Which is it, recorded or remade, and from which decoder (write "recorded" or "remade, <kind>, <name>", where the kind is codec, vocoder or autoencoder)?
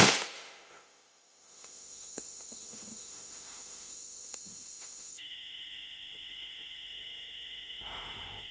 remade, autoencoder, DAC-VAE